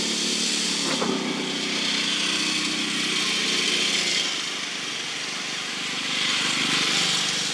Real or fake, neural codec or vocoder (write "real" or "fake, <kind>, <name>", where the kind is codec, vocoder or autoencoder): real